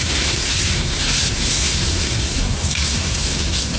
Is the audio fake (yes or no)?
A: yes